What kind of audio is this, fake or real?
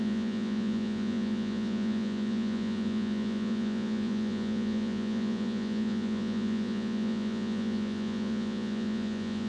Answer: fake